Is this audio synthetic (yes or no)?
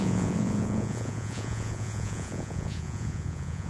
yes